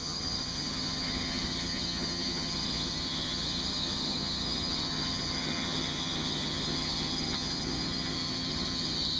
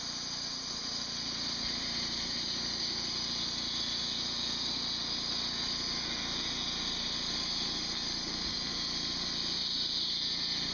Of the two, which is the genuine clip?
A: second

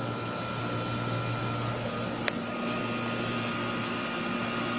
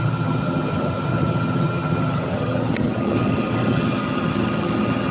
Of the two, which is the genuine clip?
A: first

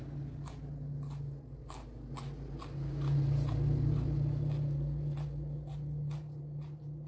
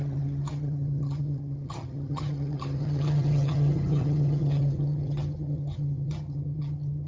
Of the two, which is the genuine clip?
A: first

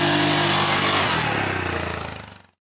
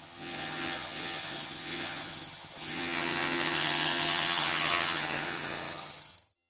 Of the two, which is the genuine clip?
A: first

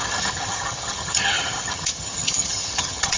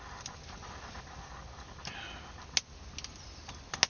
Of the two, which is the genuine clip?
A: second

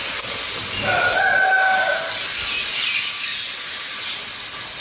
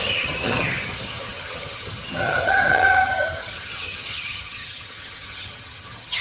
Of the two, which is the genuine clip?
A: first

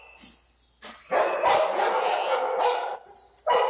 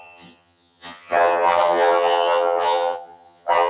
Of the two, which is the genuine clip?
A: first